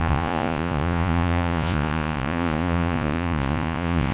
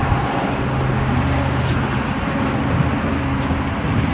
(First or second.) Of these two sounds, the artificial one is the first